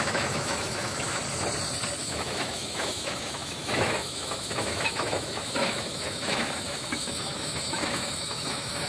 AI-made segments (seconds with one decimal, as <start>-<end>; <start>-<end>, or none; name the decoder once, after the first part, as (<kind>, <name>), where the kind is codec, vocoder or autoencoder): 0.0-1.2 (autoencoder, DAC-VAE); 2.0-8.9